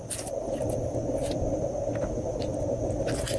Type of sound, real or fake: real